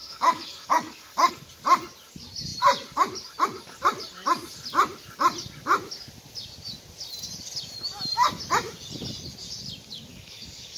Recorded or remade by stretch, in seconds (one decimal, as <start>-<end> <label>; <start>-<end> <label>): 0.0-1.3 remade; 1.3-10.1 recorded; 10.1-10.8 remade